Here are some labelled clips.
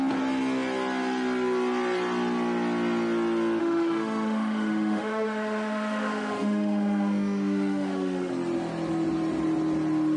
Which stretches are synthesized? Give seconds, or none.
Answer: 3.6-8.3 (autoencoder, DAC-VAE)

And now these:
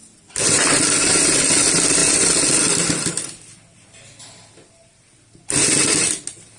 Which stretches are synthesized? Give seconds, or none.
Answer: none